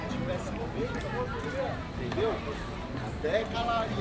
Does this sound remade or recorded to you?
recorded